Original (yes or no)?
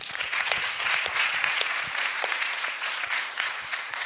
no